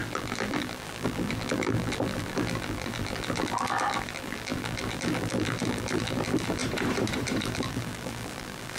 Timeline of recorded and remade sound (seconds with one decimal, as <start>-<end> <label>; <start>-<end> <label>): 0.0-6.6 remade; 6.6-7.4 recorded; 7.4-8.8 remade